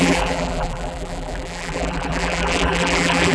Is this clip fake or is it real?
fake